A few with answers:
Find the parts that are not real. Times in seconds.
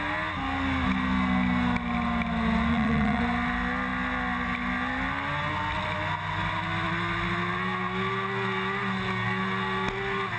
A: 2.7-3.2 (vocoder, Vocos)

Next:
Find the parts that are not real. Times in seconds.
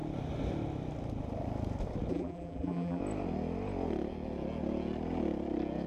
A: 2.1-3.0 (vocoder, BigVGAN v2)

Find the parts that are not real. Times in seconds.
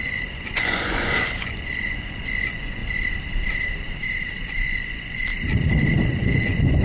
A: 0.0-2.8 (vocoder, Vocos); 4.5-5.3; 6.1-6.8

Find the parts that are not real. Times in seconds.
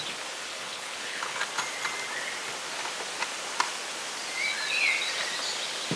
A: 0.5-1.4 (codec, HILCodec)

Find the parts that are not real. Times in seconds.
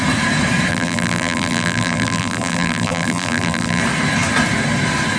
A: 0.7-3.8 (vocoder, BigVGAN v2)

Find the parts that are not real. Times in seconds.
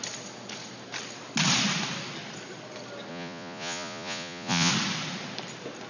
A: 3.1-4.7 (vocoder, Vocos)